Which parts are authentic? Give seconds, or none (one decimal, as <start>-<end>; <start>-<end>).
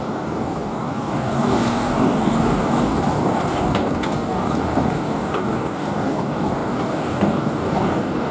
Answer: none